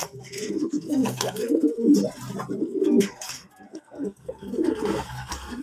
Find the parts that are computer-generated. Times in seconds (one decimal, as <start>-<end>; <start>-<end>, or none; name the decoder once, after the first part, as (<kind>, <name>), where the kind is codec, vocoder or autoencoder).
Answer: 0.0-1.9 (codec, SNAC); 2.6-5.6